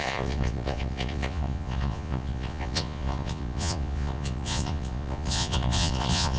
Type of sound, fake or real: fake